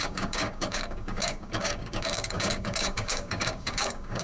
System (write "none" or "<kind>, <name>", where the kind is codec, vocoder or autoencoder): codec, DAC